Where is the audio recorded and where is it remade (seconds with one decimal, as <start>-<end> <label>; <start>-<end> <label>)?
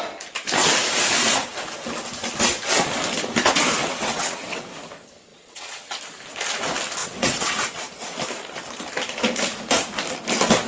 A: 0.0-3.8 recorded; 3.8-4.7 remade; 4.7-5.3 recorded; 5.3-5.9 remade; 5.9-7.0 recorded; 7.0-7.8 remade; 7.8-10.7 recorded